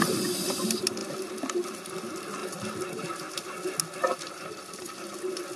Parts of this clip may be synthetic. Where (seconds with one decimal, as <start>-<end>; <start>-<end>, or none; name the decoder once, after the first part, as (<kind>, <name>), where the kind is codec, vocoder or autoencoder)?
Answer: none